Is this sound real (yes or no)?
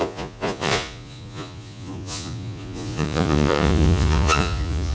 no